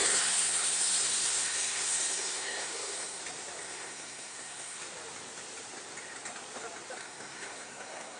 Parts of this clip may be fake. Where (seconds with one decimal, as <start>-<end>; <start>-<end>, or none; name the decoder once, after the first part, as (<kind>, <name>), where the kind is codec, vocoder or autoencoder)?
0.0-3.2 (codec, SNAC); 3.6-4.8; 7.0-8.2